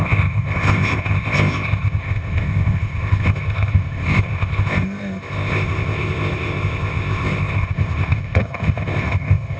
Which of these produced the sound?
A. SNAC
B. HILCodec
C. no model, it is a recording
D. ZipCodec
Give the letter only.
D